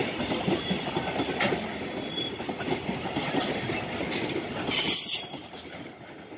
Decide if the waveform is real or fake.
real